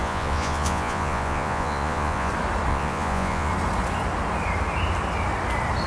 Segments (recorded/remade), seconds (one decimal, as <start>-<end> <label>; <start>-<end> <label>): 0.0-2.3 remade; 2.3-2.7 recorded; 2.7-3.5 remade; 3.5-5.9 recorded